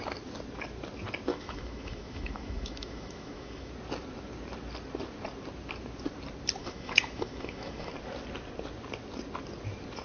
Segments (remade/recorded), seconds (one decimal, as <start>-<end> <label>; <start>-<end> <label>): 0.0-1.3 recorded; 1.3-3.7 remade; 3.7-6.6 recorded; 6.6-7.9 remade; 7.9-10.0 recorded